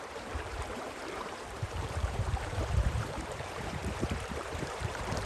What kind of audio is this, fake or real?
fake